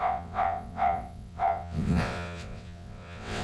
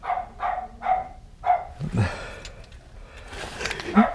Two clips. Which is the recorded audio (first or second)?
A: second